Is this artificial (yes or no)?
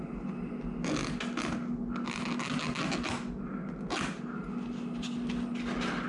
no